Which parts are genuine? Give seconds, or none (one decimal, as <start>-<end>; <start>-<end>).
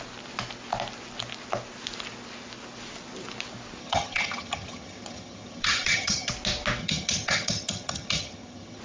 0.0-3.8; 6.3-6.8